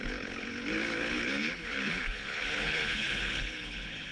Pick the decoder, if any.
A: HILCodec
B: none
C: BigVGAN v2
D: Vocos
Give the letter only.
A